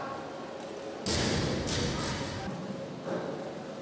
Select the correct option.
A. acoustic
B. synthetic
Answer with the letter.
A